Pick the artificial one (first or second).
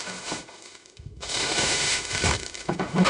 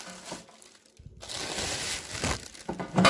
first